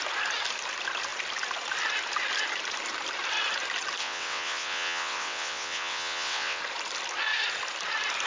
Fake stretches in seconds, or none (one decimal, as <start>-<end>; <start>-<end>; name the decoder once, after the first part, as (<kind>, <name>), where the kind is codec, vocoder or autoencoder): 4.0-6.6 (vocoder, WaveNeXt)